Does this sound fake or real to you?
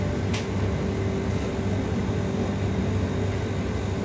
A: real